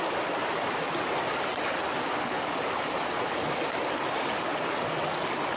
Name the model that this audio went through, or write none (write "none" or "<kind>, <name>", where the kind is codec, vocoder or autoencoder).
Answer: none